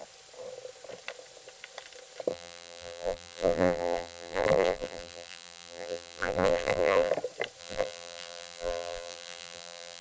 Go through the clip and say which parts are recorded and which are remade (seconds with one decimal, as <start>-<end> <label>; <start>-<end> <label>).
0.0-2.3 recorded; 2.3-7.1 remade; 7.1-7.6 recorded; 7.6-10.0 remade